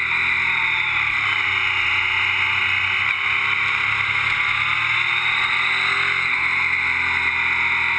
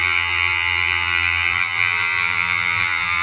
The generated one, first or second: second